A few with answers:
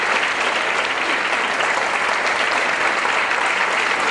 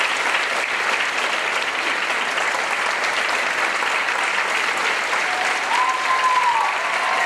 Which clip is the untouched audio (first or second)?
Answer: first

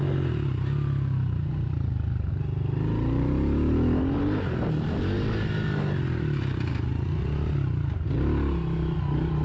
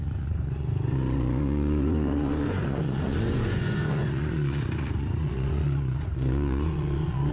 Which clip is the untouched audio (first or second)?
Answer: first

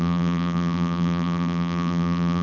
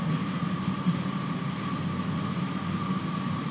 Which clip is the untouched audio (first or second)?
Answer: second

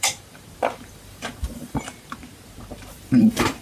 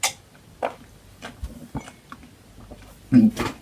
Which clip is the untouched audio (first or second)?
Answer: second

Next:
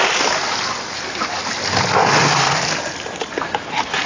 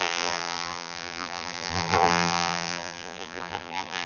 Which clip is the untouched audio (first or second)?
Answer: first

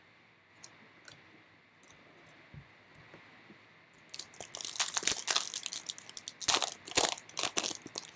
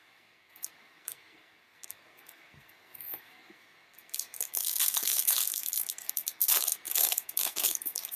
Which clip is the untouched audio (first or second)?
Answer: first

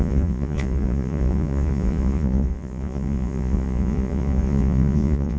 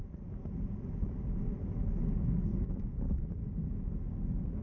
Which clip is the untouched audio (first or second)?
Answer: second